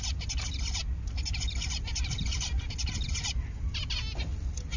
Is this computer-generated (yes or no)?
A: no